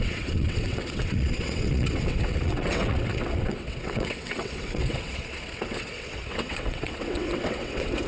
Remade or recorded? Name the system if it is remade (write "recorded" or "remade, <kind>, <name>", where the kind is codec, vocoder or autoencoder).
remade, vocoder, WaveNeXt